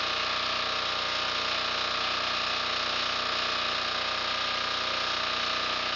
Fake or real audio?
real